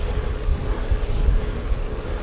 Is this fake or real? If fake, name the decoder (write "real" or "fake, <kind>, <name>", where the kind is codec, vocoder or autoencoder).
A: real